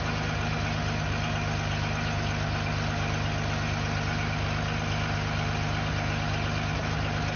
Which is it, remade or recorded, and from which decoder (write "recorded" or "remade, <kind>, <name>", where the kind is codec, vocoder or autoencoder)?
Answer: recorded